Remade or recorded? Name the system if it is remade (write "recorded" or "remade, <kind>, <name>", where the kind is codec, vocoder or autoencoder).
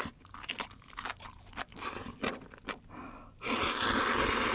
recorded